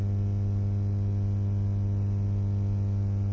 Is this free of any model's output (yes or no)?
yes